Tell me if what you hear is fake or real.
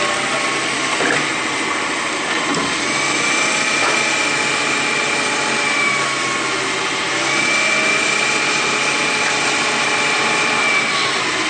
real